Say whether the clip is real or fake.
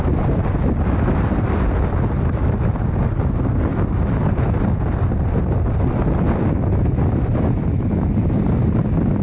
real